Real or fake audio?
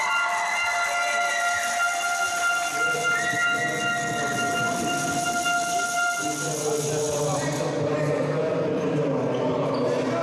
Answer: real